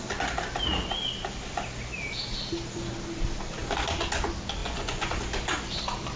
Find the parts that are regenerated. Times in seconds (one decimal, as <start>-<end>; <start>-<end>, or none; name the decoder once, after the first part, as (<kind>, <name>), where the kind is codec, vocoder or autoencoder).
4.6-5.1 (vocoder, Vocos)